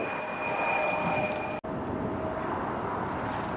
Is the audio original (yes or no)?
yes